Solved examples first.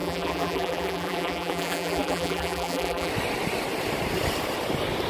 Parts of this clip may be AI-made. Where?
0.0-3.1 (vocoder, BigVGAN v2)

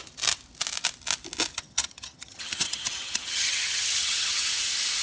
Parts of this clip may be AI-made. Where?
1.5-4.5 (vocoder, HiFi-GAN)

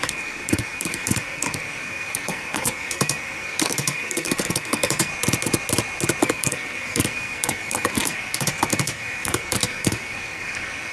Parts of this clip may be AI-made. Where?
0.0-5.1 (codec, SNAC); 6.2-10.9